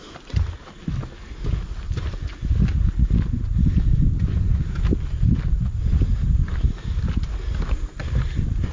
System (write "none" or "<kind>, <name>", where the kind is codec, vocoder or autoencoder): none